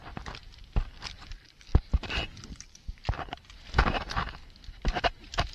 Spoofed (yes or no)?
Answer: no